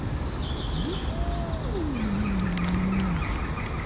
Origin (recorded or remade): recorded